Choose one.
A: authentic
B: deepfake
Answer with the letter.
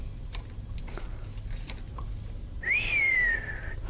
A